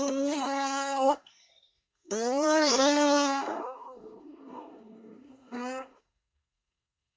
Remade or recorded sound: remade